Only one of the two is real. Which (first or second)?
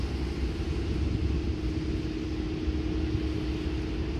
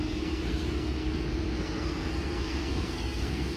first